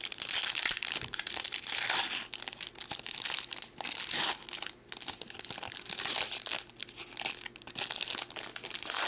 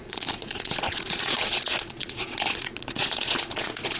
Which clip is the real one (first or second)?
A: first